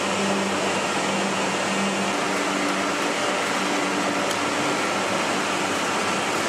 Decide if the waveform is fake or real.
real